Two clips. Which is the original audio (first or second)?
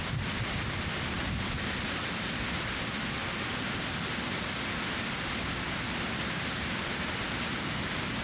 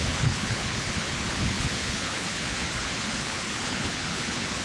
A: first